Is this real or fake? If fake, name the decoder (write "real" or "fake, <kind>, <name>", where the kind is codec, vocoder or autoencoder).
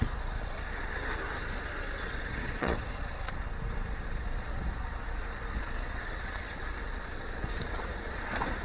fake, vocoder, Vocos